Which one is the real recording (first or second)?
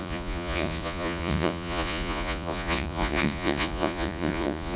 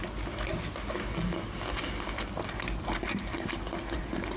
second